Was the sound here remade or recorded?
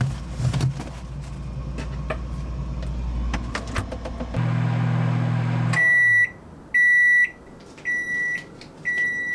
recorded